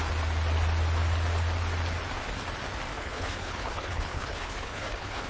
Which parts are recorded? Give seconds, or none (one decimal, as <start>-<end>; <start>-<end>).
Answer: 0.0-2.9